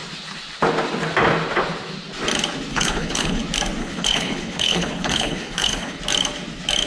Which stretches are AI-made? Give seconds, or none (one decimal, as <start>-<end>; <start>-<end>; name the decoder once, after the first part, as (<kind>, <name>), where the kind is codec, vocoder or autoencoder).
2.7-3.4 (codec, HILCodec); 3.8-6.0